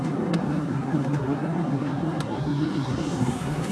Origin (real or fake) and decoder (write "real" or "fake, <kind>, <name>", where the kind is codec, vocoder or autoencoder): fake, codec, SNAC